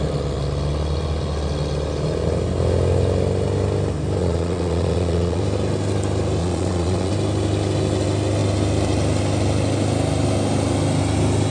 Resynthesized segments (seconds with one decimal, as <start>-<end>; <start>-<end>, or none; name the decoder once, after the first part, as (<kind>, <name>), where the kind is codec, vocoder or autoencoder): 4.2-5.4 (vocoder, Vocos); 6.4-7.1